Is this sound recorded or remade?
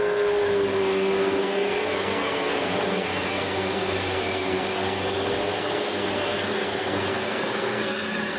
remade